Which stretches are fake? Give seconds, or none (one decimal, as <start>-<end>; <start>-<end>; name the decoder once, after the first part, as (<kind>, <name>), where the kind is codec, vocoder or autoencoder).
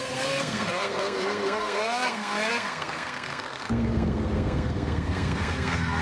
0.0-6.0 (codec, SNAC)